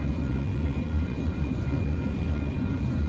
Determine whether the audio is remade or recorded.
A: remade